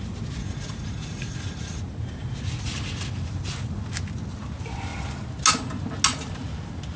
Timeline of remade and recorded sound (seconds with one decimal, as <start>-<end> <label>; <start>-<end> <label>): 0.0-0.4 recorded; 0.4-1.8 remade; 1.8-7.0 recorded